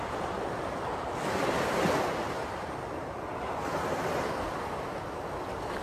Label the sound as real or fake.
real